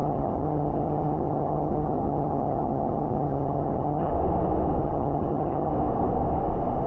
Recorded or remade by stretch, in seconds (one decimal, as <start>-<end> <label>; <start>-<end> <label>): 0.0-4.1 remade; 4.1-4.8 recorded; 4.8-5.7 remade; 5.7-6.9 recorded